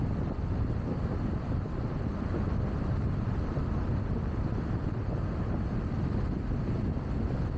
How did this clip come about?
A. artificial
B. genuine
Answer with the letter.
B